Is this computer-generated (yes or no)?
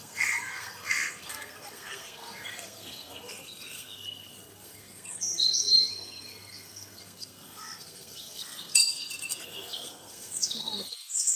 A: yes